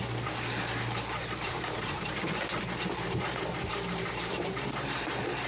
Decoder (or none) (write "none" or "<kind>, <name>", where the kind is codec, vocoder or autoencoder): vocoder, BigVGAN v2